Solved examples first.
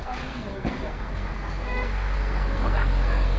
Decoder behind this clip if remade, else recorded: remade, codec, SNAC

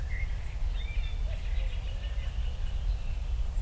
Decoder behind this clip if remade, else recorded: recorded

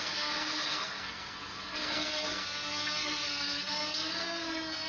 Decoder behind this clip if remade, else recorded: remade, codec, SNAC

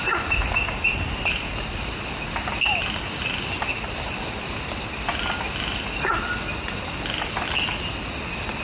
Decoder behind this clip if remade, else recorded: recorded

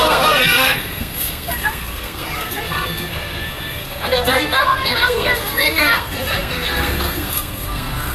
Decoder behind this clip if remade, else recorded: remade, codec, SNAC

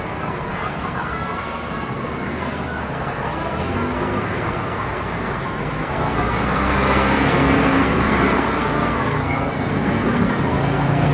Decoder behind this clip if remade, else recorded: remade, codec, SNAC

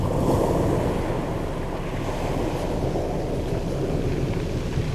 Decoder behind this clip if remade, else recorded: recorded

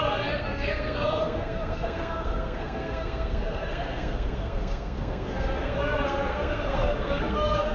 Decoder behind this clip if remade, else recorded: remade, codec, SNAC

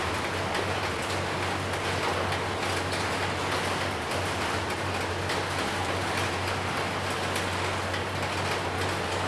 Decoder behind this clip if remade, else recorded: recorded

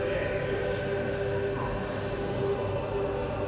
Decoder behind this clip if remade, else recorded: recorded